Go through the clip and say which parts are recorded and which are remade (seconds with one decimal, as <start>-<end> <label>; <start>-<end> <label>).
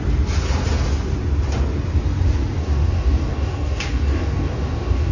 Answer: 0.0-2.6 recorded; 2.6-5.1 remade